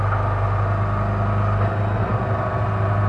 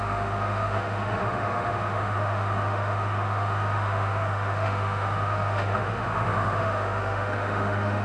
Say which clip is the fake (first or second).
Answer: second